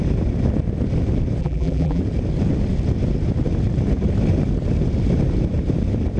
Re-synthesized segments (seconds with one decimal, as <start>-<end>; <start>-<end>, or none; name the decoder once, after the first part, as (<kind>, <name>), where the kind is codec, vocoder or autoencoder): 1.4-2.0 (vocoder, BigVGAN v2)